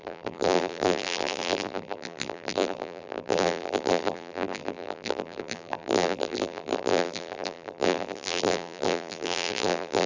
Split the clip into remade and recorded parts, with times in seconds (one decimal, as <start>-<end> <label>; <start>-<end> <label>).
0.0-10.1 remade